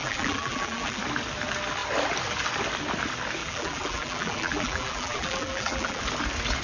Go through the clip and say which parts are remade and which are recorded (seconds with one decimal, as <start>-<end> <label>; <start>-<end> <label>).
0.0-1.0 remade; 1.0-3.4 recorded; 3.4-6.0 remade; 6.0-6.6 recorded